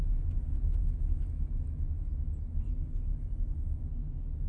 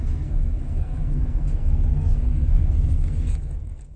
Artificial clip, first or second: second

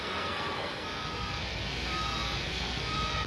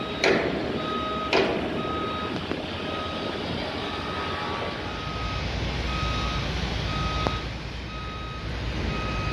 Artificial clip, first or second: first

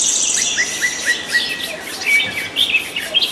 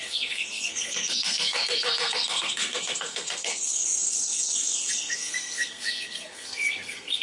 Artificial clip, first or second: second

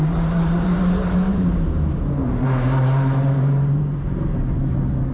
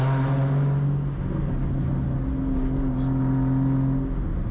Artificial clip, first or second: first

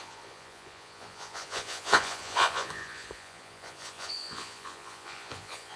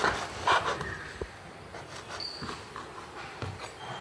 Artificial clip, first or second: first